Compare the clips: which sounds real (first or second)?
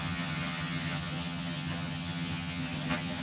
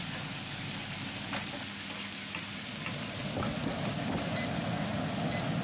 second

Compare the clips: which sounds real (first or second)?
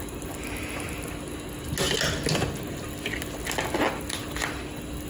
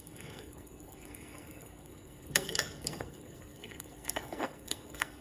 first